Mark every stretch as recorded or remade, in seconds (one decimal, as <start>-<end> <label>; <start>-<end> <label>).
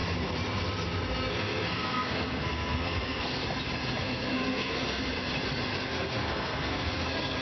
0.0-1.3 recorded; 1.3-3.4 remade; 3.4-4.0 recorded; 4.0-5.0 remade; 5.0-5.7 recorded; 5.7-7.4 remade